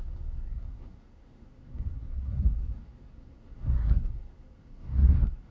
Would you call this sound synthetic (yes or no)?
yes